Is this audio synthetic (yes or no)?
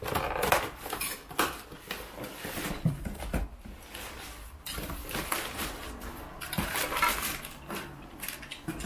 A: no